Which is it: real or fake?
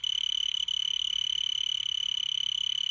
real